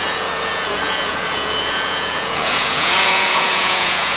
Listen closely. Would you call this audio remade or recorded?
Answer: remade